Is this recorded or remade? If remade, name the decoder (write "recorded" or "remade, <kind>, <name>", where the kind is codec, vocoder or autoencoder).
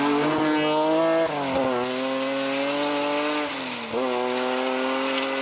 recorded